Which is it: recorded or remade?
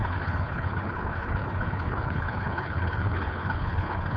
remade